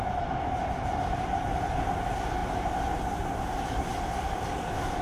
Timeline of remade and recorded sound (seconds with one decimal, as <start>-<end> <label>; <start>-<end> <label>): 0.0-3.9 recorded; 3.9-4.4 remade; 4.4-5.0 recorded